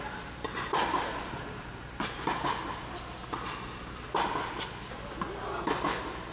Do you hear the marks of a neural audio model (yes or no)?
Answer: no